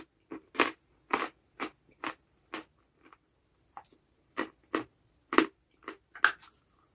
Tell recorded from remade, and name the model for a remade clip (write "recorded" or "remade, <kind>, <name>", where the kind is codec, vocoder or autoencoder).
recorded